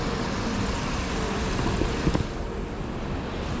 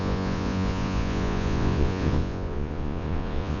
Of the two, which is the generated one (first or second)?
second